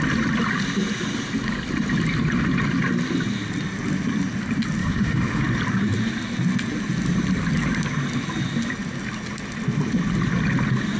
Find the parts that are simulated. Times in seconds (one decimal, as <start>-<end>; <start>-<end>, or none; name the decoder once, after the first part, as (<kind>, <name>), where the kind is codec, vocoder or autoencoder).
4.8-5.4 (autoencoder, DAC-VAE)